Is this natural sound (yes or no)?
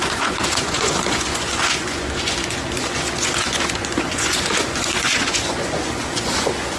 no